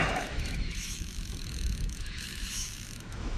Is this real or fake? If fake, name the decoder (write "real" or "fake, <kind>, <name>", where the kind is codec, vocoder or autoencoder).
fake, autoencoder, DAC-VAE